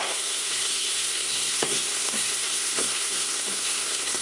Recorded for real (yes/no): no